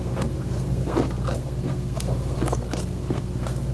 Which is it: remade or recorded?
remade